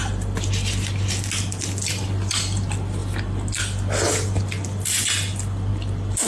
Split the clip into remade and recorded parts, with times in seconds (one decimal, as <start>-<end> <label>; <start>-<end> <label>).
0.0-6.3 recorded